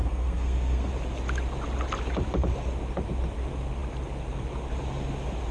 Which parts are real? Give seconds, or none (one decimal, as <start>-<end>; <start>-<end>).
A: 0.9-5.5